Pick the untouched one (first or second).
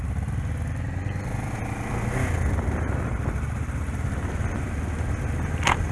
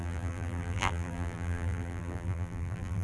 first